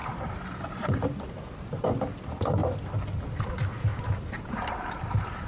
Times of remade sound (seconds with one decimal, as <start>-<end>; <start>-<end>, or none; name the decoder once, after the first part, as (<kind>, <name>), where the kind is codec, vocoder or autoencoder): 0.0-1.3 (vocoder, BigVGAN v2); 3.9-5.5